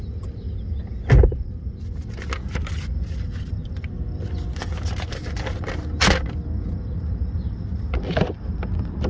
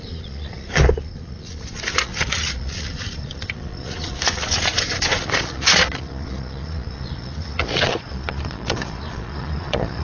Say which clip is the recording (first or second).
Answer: first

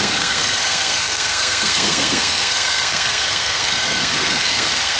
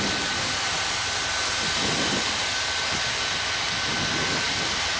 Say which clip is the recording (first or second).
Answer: second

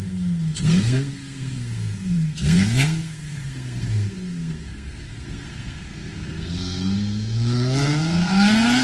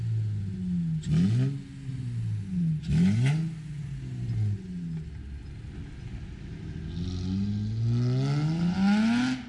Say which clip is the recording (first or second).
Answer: second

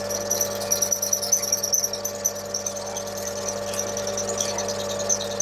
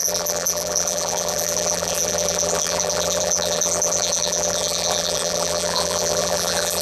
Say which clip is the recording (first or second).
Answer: first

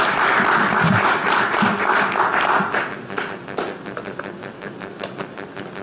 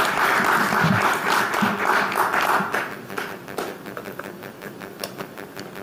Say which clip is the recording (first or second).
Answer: first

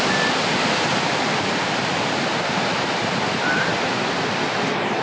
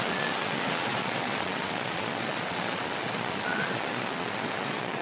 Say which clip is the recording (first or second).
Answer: first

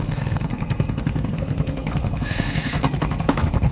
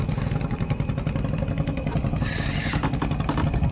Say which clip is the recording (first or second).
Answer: second